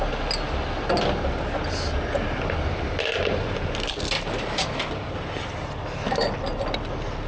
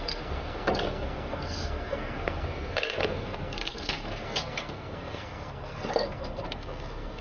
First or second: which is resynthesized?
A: second